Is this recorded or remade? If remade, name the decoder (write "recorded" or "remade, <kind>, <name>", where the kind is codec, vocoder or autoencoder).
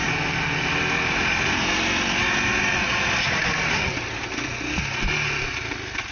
recorded